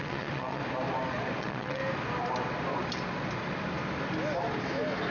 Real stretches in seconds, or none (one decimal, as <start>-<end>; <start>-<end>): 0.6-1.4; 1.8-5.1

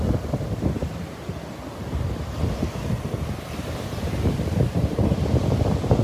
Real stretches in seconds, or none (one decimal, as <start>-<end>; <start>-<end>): 0.0-6.0

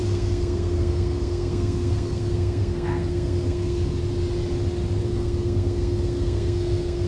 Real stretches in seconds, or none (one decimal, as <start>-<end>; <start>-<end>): 3.9-5.0